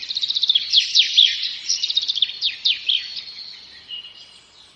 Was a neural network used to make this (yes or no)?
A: no